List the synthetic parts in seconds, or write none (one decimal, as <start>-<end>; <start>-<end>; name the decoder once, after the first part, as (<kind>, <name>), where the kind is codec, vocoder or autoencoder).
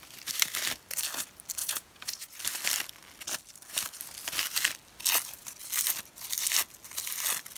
1.6-2.3 (vocoder, Vocos)